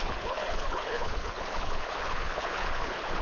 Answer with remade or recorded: remade